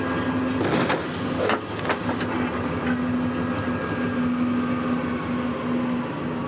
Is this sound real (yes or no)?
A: yes